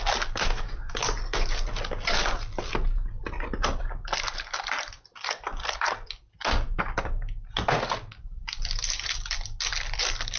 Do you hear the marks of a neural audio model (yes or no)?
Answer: no